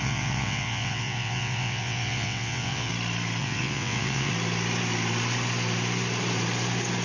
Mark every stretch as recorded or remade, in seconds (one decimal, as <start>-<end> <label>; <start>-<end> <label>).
0.0-2.9 remade; 2.9-3.4 recorded; 3.4-4.3 remade; 4.3-7.0 recorded